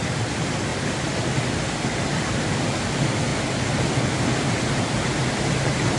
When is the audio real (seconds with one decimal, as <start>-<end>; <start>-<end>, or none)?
0.7-2.2; 3.3-5.6